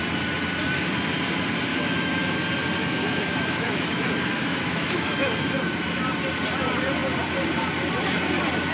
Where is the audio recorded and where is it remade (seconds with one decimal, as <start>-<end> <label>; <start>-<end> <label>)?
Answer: 0.0-1.7 recorded; 1.7-2.3 remade; 2.3-2.8 recorded; 2.8-5.3 remade; 5.3-8.7 recorded